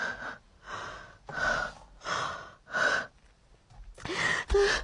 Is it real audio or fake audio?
real